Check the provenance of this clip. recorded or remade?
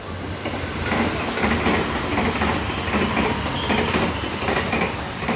recorded